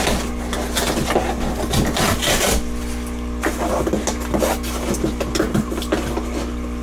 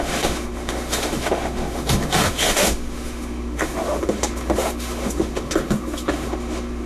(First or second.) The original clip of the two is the first